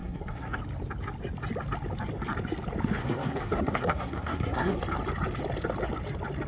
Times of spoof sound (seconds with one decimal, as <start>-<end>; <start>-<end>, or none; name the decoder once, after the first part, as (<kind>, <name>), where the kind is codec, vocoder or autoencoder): 0.0-0.6 (codec, SNAC); 3.0-4.8